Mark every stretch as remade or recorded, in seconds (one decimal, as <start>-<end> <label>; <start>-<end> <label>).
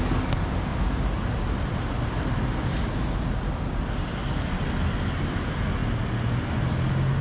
0.0-7.2 recorded